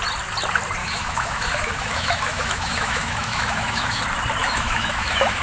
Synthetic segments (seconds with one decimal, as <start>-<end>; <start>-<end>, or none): 0.8-4.0; 4.4-5.4